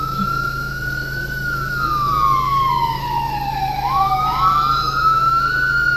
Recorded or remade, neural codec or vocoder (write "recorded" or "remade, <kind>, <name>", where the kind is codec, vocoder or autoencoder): remade, autoencoder, DAC-VAE